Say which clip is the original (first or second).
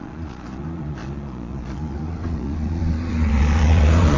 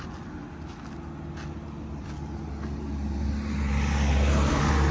second